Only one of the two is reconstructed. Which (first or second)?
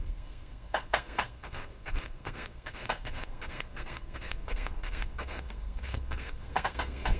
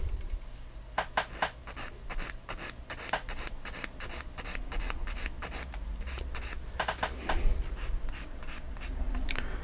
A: first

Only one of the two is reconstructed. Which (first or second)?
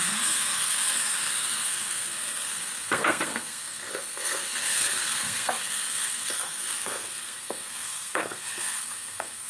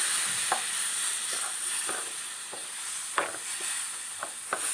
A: first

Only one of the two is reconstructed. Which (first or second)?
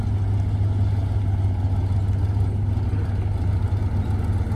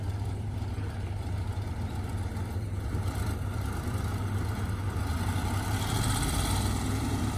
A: second